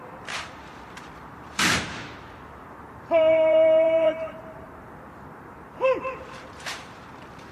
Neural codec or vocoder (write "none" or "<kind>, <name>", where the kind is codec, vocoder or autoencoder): vocoder, BigVGAN v2